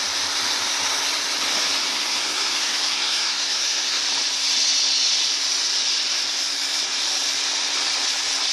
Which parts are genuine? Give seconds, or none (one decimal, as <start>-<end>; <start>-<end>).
0.0-1.9; 4.0-8.5